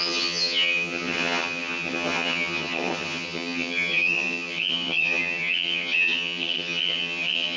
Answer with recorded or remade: remade